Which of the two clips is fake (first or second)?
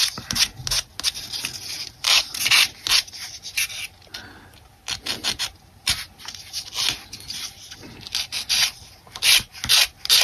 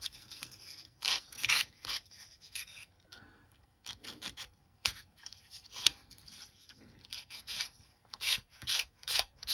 second